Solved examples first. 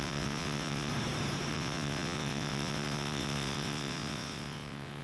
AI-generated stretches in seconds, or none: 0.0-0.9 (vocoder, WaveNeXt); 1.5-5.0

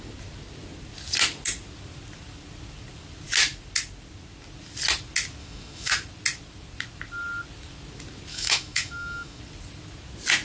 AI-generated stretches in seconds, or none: 5.4-5.9 (autoencoder, DAC-VAE); 8.3-9.4

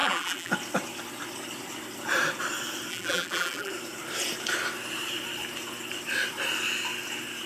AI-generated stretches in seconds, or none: 0.0-0.5 (vocoder, BigVGAN v2); 2.9-3.7

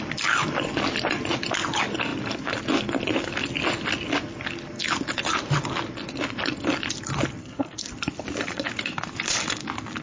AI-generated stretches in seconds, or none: 7.4-7.9 (codec, SNAC)

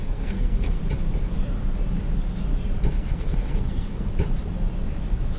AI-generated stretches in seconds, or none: 0.0-0.8 (codec, SNAC); 2.9-4.1

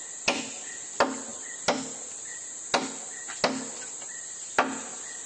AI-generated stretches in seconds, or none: none